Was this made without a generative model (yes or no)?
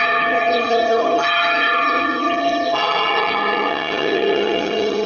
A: no